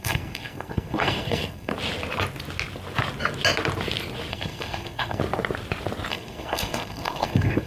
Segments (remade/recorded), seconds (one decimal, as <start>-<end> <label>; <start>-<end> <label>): 0.0-1.7 remade; 1.7-4.3 recorded; 4.3-5.2 remade; 5.2-6.1 recorded; 6.1-7.7 remade

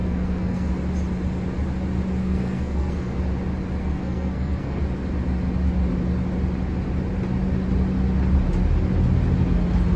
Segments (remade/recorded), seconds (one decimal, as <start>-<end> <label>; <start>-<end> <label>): 0.0-0.7 remade; 0.7-2.2 recorded; 2.2-3.2 remade; 3.2-3.8 recorded; 3.8-4.8 remade; 4.8-10.0 recorded

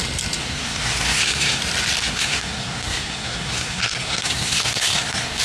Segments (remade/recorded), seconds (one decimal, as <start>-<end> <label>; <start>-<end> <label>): 0.0-0.4 recorded; 0.4-1.6 remade; 1.6-2.0 recorded; 2.0-5.4 remade

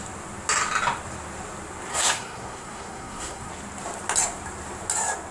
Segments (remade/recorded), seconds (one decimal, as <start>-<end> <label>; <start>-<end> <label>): 0.0-1.9 recorded; 1.9-3.5 remade; 3.5-5.3 recorded

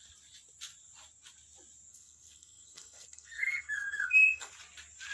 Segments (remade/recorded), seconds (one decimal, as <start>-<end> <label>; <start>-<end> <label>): 0.0-1.9 recorded; 1.9-4.5 remade; 4.5-5.1 recorded

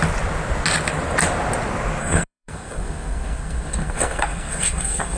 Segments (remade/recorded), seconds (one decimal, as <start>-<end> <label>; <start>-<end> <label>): 0.0-2.0 recorded; 2.0-5.2 remade

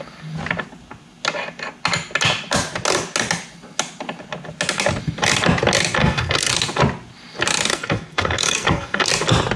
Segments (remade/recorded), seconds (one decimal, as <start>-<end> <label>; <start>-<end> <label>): 0.0-6.0 recorded; 6.0-6.5 remade; 6.5-7.7 recorded; 7.7-9.1 remade; 9.1-9.6 recorded

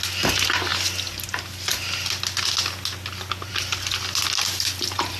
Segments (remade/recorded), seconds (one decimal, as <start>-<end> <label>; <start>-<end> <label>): 0.0-5.2 recorded